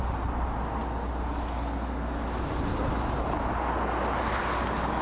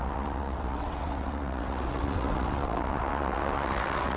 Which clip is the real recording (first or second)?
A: first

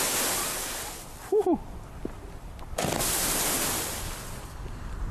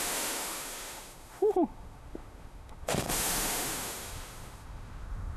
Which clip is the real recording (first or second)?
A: first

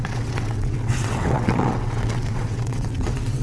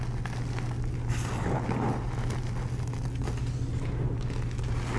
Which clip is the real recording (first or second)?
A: second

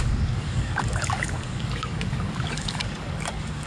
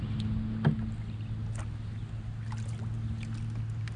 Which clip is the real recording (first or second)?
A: second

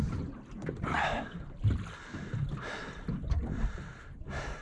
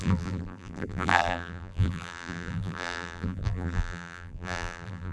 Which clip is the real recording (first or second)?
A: first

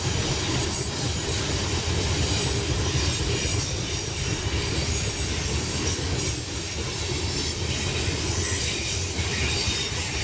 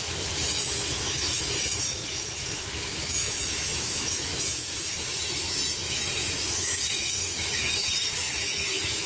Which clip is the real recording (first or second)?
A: first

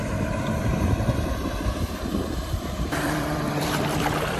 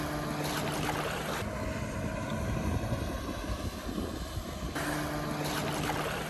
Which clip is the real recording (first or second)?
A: second